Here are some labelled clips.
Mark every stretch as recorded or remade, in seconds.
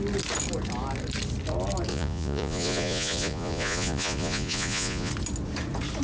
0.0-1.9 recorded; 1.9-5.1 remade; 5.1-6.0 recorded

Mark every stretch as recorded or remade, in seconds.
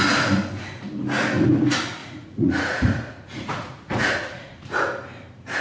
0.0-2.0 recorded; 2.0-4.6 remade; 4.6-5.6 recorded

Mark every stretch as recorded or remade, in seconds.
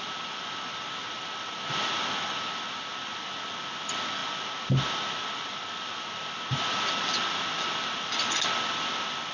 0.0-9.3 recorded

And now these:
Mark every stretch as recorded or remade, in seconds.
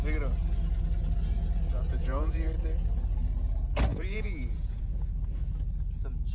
0.0-1.9 recorded; 1.9-2.5 remade; 2.5-3.9 recorded; 3.9-4.8 remade; 4.8-6.3 recorded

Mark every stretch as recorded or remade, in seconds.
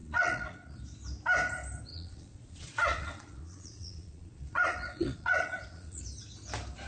0.0-0.8 remade; 0.8-1.9 recorded; 1.9-6.0 remade; 6.0-6.9 recorded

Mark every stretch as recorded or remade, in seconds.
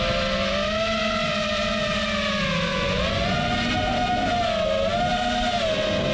0.0-2.7 recorded; 2.7-3.7 remade; 3.7-6.1 recorded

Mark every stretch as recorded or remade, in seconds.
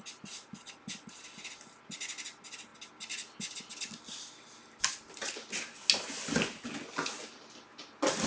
0.0-8.3 recorded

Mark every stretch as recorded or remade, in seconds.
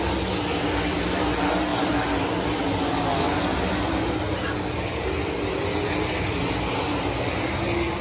0.0-8.0 recorded